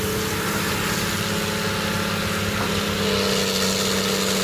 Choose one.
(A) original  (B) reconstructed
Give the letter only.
A